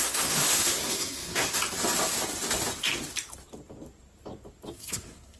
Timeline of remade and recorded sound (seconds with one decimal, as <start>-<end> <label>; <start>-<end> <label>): 0.0-1.6 remade; 1.6-4.7 recorded; 4.7-5.4 remade